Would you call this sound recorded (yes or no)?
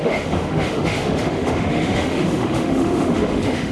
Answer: no